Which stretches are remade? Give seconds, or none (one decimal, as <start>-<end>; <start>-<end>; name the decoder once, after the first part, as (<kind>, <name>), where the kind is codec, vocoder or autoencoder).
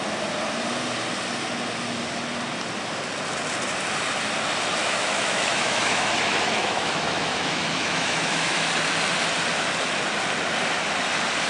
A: 4.8-6.1 (autoencoder, DAC-VAE); 6.6-8.7